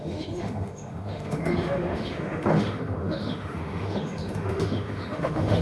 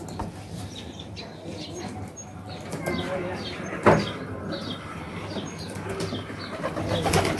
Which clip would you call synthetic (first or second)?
first